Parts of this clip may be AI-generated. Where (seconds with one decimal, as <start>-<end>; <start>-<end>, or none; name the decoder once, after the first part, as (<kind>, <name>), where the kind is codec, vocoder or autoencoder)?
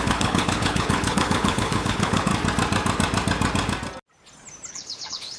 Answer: 0.0-2.3 (codec, HILCodec); 4.7-5.4